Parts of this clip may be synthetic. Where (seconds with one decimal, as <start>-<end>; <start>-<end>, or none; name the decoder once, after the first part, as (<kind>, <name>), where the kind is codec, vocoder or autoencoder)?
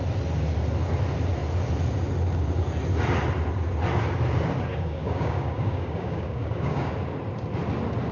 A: 4.7-6.9 (codec, DAC)